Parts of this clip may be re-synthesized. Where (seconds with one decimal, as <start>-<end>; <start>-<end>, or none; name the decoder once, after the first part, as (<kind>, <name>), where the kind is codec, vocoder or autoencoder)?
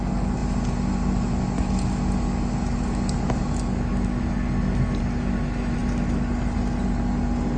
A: none